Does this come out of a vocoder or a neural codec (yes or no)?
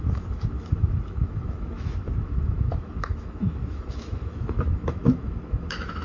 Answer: yes